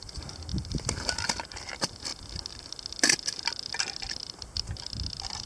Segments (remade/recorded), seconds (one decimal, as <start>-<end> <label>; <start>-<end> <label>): 0.0-5.5 recorded

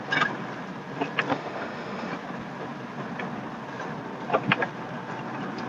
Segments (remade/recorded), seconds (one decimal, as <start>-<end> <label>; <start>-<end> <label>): 0.0-1.3 recorded; 1.3-2.1 remade; 2.1-5.7 recorded

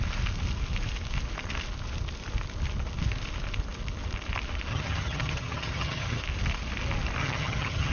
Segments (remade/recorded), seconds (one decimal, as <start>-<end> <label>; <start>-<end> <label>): 0.0-4.7 recorded; 4.7-6.2 remade; 6.2-7.2 recorded; 7.2-7.9 remade

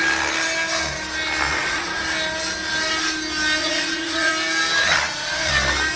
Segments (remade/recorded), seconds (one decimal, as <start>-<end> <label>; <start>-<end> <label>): 0.0-1.5 recorded; 1.5-2.0 remade; 2.0-3.6 recorded; 3.6-4.3 remade; 4.3-4.8 recorded; 4.8-5.5 remade; 5.5-6.0 recorded

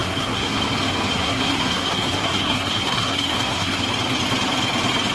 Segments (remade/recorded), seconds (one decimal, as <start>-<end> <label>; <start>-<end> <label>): 0.0-0.6 remade; 0.6-1.1 recorded; 1.1-3.8 remade; 3.8-5.1 recorded

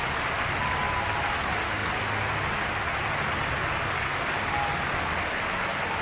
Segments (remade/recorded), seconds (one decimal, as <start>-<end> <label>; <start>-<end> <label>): 0.0-0.7 remade; 0.7-6.0 recorded

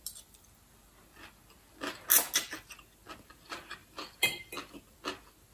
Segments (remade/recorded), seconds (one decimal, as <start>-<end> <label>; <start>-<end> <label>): 0.0-3.8 recorded; 3.8-4.8 remade; 4.8-5.5 recorded

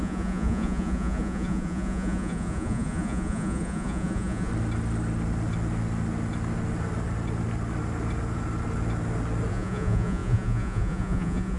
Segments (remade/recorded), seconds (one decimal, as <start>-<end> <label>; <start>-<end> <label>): 0.0-4.5 remade; 4.5-9.5 recorded; 9.5-11.6 remade